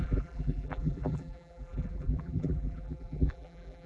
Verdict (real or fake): fake